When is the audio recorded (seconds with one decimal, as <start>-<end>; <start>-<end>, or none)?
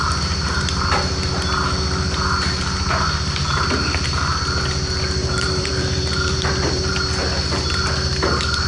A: 0.0-5.2; 6.9-8.7